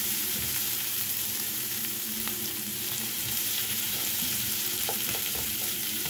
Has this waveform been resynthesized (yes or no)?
yes